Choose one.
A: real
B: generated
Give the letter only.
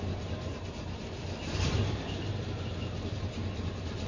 A